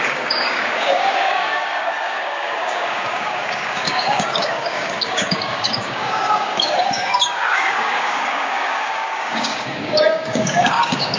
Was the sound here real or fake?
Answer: fake